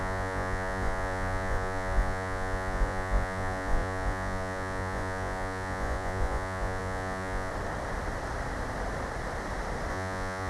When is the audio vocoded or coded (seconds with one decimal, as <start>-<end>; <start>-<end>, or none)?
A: 0.0-7.5; 9.9-10.5